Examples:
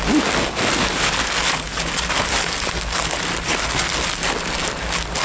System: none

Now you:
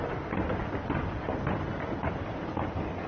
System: none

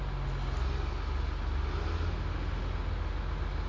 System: none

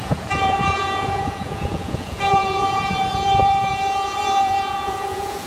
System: vocoder, Vocos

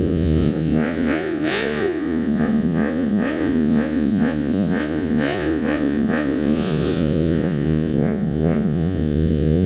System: vocoder, Vocos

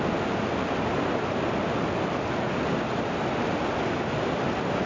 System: none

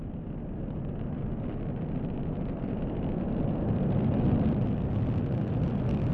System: none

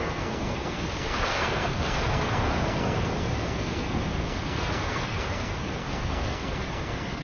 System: codec, SNAC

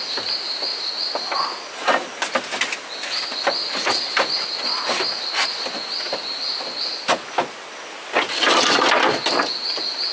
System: none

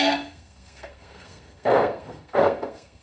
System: codec, SNAC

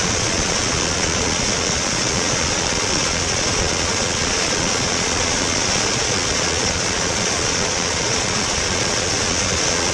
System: vocoder, Vocos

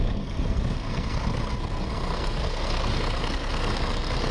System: codec, SNAC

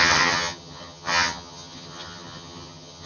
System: vocoder, HiFi-GAN